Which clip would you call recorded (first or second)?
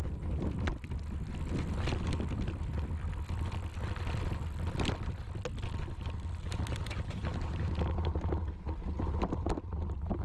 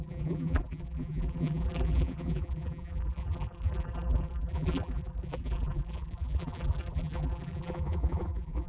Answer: first